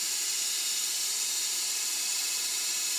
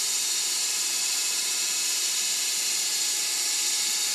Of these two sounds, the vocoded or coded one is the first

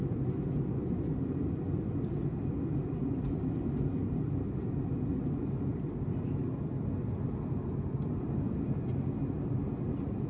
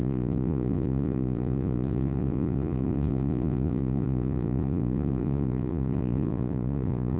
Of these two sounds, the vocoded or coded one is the second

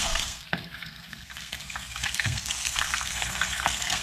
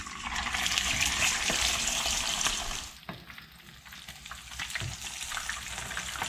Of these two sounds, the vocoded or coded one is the first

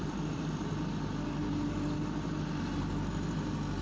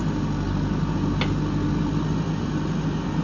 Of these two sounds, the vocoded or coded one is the first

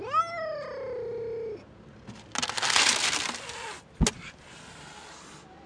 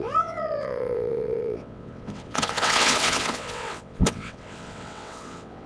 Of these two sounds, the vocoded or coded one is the second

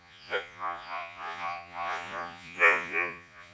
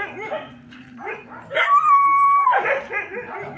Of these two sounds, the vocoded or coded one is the first